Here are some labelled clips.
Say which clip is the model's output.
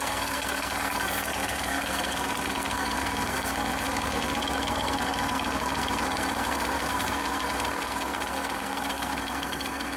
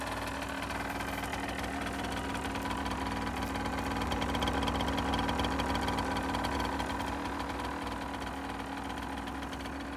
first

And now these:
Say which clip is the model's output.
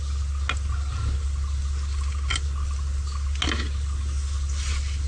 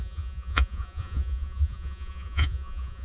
second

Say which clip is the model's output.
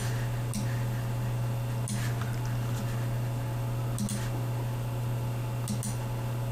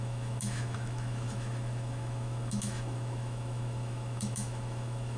second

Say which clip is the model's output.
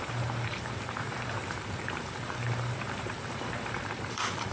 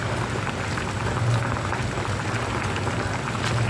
first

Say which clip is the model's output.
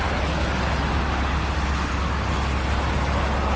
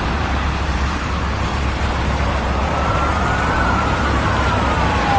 second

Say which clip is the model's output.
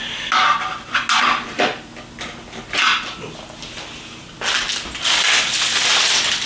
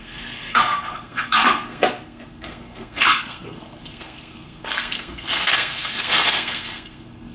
second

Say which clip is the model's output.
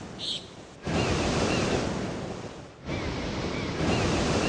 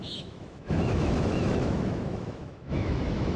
second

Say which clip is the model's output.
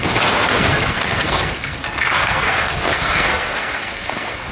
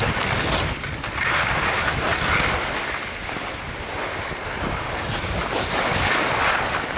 first